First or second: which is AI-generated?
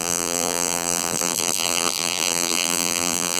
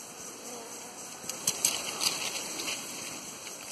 first